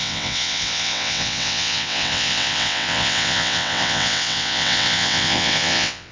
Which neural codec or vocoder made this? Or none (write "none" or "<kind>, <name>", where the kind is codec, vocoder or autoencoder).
vocoder, WaveNeXt